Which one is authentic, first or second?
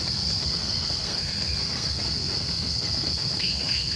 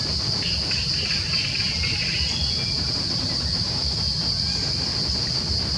second